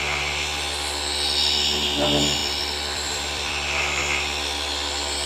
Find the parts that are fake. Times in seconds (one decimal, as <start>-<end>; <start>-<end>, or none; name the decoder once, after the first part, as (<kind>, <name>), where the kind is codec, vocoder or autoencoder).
2.4-4.0 (vocoder, BigVGAN v2)